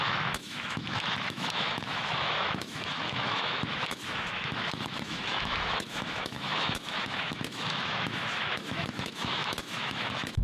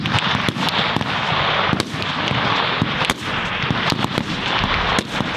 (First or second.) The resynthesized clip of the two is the first